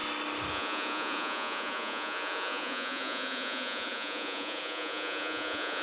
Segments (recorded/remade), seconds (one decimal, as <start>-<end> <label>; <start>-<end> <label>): 0.0-0.5 recorded; 0.5-5.8 remade